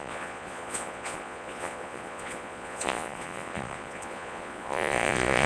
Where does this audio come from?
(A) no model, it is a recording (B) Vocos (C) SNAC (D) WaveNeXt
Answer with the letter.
B